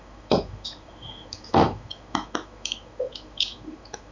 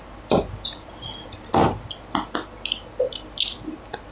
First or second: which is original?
second